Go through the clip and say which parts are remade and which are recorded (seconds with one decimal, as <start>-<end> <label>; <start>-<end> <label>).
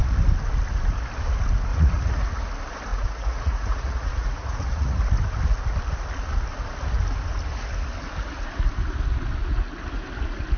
0.0-1.7 recorded; 1.7-2.3 remade; 2.3-2.9 recorded; 2.9-5.0 remade; 5.0-10.6 recorded